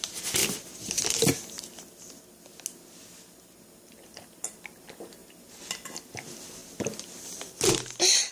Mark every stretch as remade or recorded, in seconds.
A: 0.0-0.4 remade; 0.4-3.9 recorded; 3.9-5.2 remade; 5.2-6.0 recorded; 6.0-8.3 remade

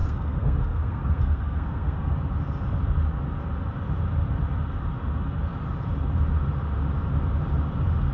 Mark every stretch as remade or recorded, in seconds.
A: 0.0-2.1 remade; 2.1-8.1 recorded